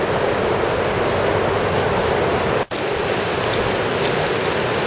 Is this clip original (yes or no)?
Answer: yes